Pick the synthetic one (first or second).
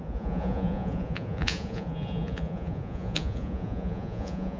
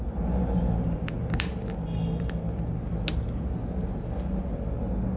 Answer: first